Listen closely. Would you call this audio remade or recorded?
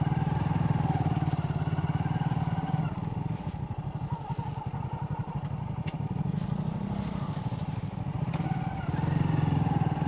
recorded